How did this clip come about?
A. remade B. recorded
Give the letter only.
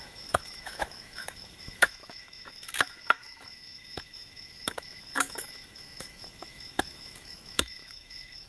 A